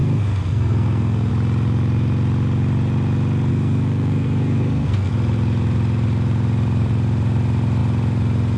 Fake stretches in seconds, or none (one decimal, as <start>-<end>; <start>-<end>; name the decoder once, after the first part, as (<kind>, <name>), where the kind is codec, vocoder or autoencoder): 0.0-1.3 (codec, SNAC); 3.5-5.1